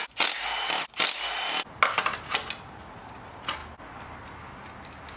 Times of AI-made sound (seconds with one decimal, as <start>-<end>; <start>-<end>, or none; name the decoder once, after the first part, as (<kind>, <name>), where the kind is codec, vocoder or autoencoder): none